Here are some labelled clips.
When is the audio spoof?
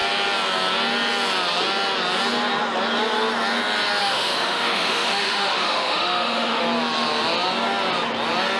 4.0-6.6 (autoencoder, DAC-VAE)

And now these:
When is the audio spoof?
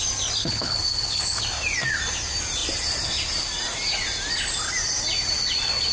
0.4-1.4 (codec, HILCodec)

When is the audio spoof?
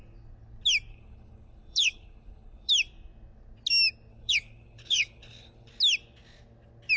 0.9-2.7 (codec, HILCodec); 4.1-5.7